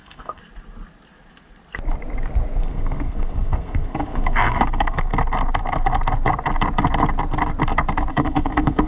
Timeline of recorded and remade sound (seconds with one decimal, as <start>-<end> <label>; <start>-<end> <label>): 0.0-0.4 remade; 0.4-2.6 recorded; 2.6-5.1 remade; 5.1-8.1 recorded; 8.1-8.9 remade

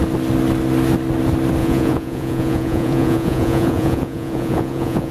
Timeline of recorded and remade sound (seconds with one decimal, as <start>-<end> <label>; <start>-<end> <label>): 0.0-1.6 recorded; 1.6-5.1 remade

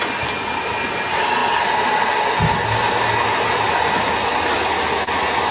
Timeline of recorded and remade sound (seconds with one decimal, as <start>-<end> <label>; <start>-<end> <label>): 0.0-5.5 recorded

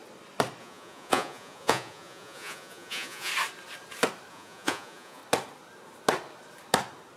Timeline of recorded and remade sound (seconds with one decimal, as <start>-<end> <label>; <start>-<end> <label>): 0.0-0.6 recorded; 0.6-3.3 remade; 3.3-4.3 recorded; 4.3-5.2 remade; 5.2-7.2 recorded